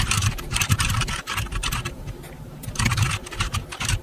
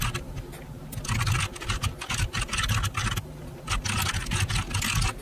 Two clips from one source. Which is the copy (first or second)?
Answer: first